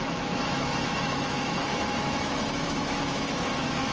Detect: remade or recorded remade